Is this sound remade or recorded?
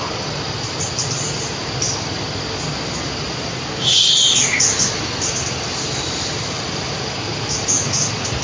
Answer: recorded